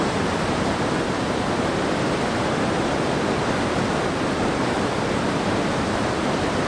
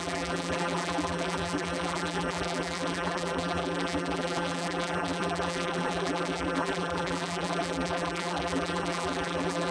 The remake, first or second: second